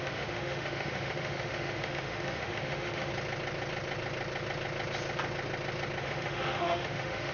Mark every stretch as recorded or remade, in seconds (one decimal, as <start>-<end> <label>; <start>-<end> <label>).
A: 0.0-3.1 remade; 3.1-6.0 recorded; 6.0-7.3 remade